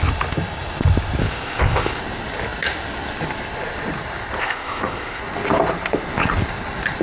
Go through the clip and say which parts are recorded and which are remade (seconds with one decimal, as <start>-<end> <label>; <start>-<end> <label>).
0.0-1.2 recorded; 1.2-2.0 remade; 2.0-4.4 recorded; 4.4-5.2 remade; 5.2-7.0 recorded